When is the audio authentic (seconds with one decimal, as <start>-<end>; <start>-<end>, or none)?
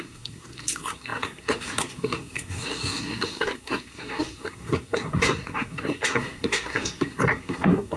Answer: none